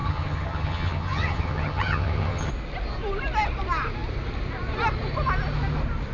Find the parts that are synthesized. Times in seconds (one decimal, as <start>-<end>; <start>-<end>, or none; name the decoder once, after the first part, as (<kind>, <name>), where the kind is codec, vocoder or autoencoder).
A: 0.0-2.5 (vocoder, HiFi-GAN)